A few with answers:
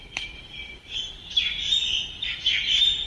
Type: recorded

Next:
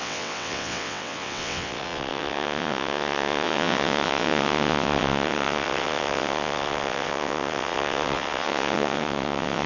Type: remade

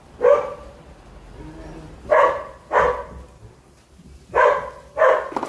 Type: recorded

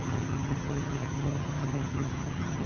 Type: remade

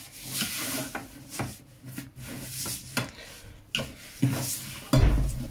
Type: recorded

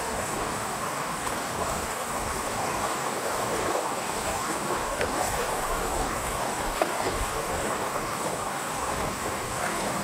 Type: remade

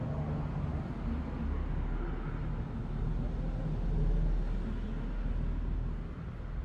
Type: recorded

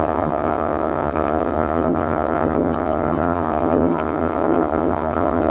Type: remade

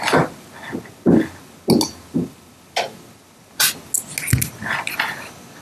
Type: recorded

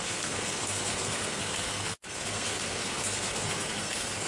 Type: remade